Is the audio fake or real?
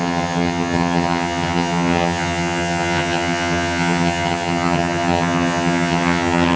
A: fake